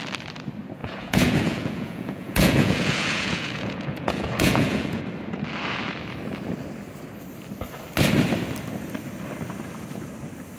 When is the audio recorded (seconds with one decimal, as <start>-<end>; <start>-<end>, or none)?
0.0-0.8; 5.0-10.6